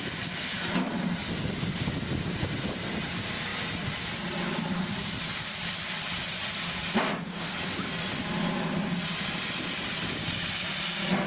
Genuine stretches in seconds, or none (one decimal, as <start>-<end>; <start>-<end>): 0.0-11.3